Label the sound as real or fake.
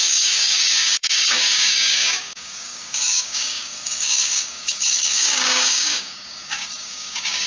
fake